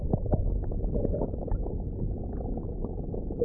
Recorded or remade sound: recorded